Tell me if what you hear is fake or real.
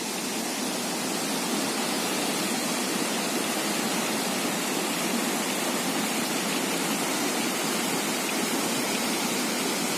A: real